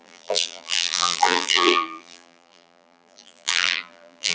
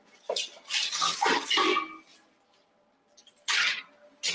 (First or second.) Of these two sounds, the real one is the second